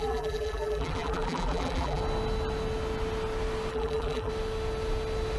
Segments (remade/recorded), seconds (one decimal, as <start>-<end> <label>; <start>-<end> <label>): 0.0-2.0 remade; 2.0-3.7 recorded; 3.7-4.3 remade; 4.3-5.4 recorded